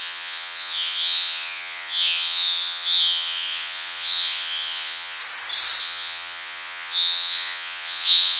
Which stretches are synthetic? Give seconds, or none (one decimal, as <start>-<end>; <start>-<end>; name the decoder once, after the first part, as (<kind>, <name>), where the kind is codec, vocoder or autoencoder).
0.0-5.2 (vocoder, Vocos); 5.8-8.4